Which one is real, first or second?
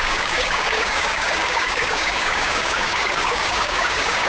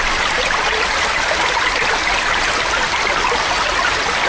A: second